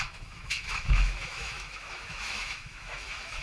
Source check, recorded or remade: remade